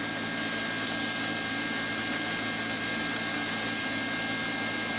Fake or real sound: real